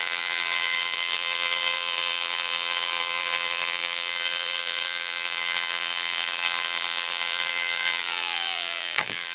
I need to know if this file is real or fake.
fake